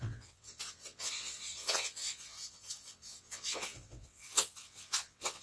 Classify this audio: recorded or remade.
remade